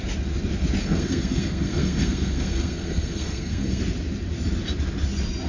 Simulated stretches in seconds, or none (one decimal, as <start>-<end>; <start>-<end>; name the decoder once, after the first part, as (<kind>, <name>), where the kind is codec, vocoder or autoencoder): 0.8-3.8 (codec, SNAC)